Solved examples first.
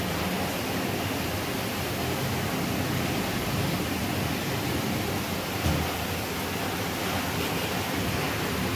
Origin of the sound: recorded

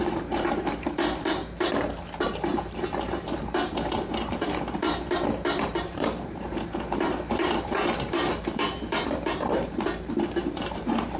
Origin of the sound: remade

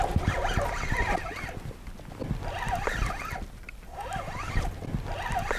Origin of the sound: recorded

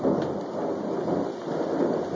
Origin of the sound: recorded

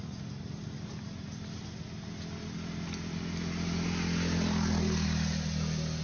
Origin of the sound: recorded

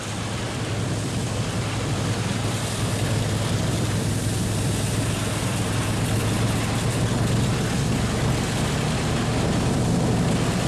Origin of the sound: recorded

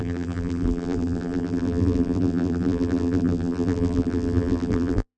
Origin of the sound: remade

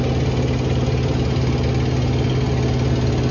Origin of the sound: recorded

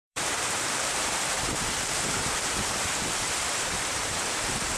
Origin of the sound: remade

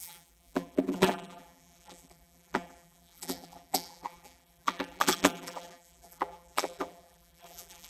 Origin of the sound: remade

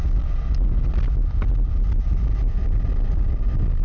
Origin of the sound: recorded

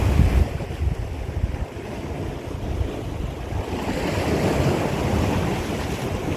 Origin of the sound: recorded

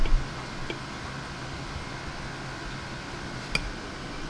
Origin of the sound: recorded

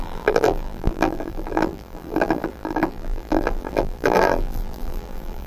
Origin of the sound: remade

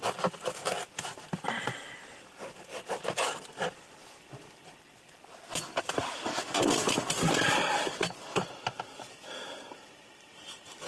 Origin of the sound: remade